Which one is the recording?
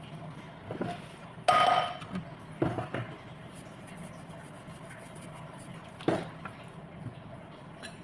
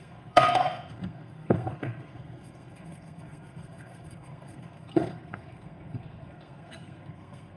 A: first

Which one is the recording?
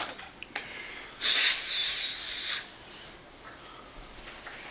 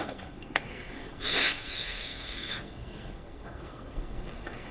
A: first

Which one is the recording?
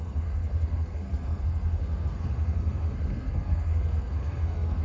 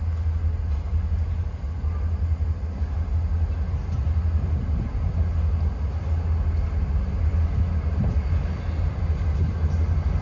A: second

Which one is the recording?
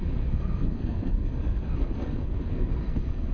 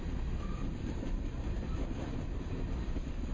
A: second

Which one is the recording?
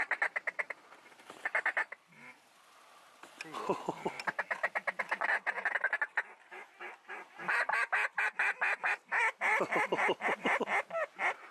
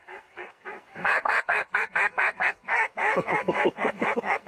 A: first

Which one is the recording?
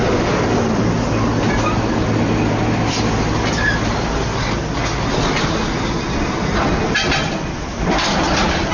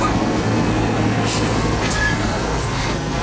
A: first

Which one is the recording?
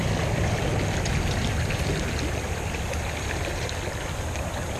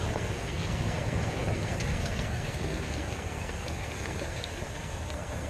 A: first